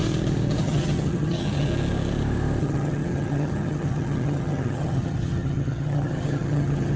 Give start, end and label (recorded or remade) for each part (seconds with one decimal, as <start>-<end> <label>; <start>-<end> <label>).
0.0-0.6 recorded; 0.6-1.7 remade; 1.7-2.6 recorded; 2.6-7.0 remade